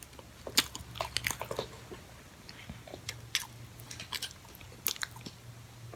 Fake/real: real